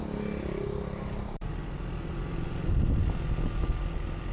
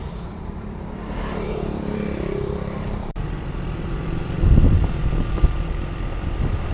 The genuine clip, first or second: first